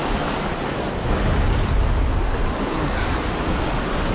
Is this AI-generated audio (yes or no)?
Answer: no